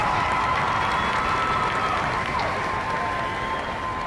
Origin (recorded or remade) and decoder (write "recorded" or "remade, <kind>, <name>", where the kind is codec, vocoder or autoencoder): recorded